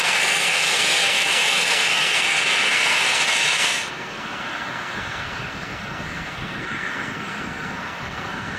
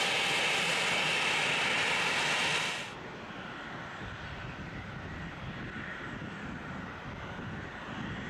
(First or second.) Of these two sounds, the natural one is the second